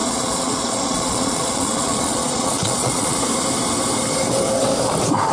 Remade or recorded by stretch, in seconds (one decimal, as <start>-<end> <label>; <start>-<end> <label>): 0.0-3.2 remade; 3.2-5.3 recorded